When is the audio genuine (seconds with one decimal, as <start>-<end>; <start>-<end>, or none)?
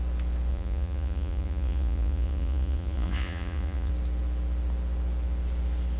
0.0-0.5; 3.9-6.0